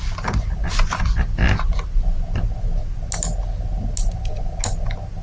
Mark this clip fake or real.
real